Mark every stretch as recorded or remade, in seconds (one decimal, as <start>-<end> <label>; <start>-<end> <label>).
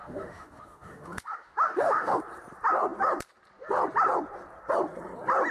0.0-2.2 remade; 2.2-5.5 recorded